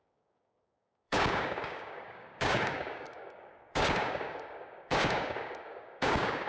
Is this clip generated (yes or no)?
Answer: yes